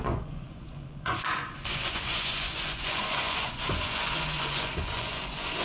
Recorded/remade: remade